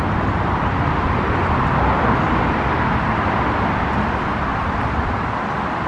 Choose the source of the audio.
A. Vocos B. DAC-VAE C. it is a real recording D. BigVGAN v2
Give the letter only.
C